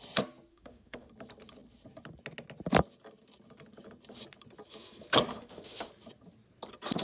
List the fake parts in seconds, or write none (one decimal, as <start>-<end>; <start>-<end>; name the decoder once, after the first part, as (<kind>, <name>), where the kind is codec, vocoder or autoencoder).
0.5-1.1 (autoencoder, DAC-VAE); 5.3-5.9